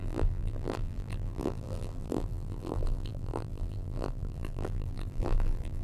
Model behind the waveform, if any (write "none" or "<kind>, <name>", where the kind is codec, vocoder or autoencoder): vocoder, BigVGAN v2